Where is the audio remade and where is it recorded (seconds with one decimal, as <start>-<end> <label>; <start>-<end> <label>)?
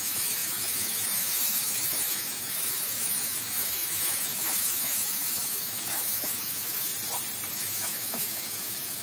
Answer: 0.0-6.9 remade; 6.9-7.5 recorded; 7.5-9.0 remade